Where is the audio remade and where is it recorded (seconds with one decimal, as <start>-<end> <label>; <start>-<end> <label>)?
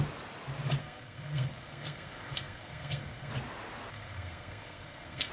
0.0-0.8 recorded; 0.8-3.3 remade; 3.3-3.9 recorded; 3.9-5.3 remade